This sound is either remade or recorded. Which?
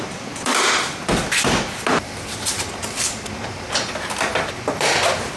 remade